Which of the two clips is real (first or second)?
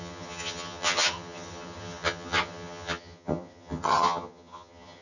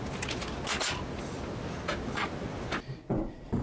second